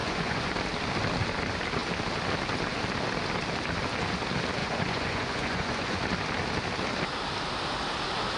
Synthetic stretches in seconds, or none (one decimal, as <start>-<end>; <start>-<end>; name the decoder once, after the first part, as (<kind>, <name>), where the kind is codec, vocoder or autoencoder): 0.0-0.5 (vocoder, Vocos); 4.6-6.0